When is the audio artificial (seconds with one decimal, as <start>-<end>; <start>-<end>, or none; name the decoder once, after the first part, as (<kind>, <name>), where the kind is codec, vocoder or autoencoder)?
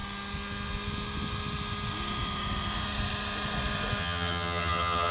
4.0-5.1 (vocoder, HiFi-GAN)